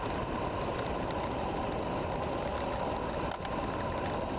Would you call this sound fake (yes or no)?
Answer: no